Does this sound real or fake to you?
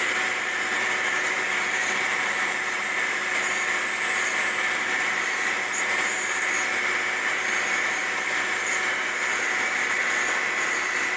real